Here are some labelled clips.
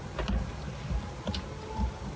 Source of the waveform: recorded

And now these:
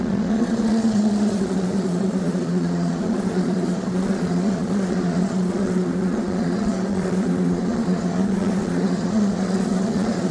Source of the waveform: remade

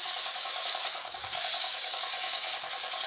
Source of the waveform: remade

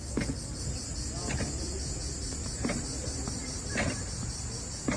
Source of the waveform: recorded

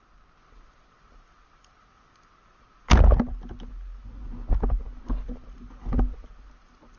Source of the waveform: recorded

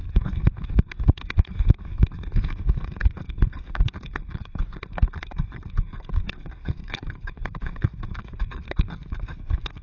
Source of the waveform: remade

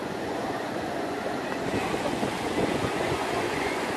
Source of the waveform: remade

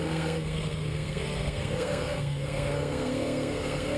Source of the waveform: remade